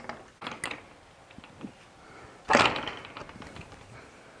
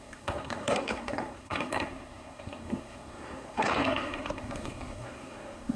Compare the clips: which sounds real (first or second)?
first